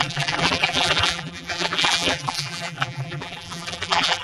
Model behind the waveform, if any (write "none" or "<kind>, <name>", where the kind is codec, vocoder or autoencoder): vocoder, BigVGAN v2